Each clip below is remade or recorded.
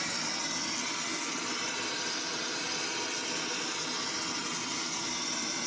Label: recorded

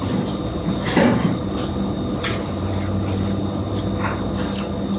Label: recorded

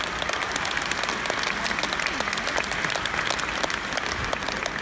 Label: recorded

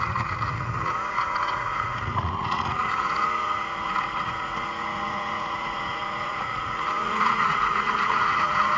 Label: remade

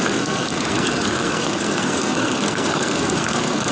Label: remade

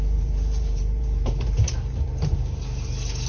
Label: remade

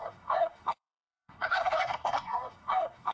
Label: remade